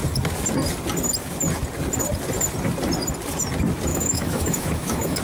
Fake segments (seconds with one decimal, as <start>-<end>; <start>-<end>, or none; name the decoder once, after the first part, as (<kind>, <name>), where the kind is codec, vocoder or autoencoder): 3.9-5.2 (autoencoder, DAC-VAE)